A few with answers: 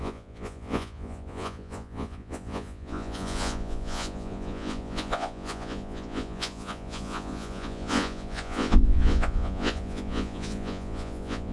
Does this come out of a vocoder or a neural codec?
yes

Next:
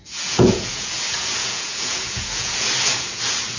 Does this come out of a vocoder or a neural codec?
yes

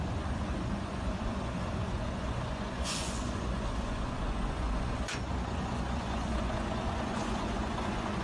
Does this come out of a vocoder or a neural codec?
yes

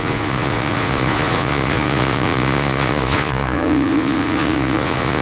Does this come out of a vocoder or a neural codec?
yes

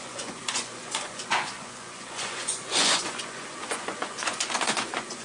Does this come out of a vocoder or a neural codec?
yes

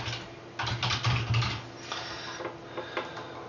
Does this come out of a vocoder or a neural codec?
no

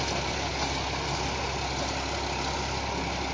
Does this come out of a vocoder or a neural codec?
no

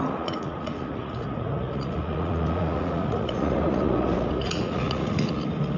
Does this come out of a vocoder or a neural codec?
yes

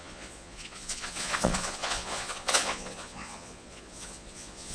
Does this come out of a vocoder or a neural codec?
yes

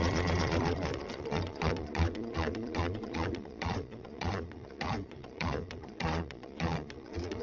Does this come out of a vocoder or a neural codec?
yes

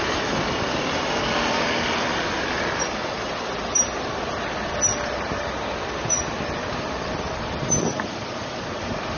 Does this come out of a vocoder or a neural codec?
no